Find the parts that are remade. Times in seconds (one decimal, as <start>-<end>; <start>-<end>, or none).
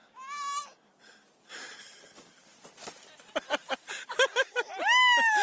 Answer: 2.4-3.9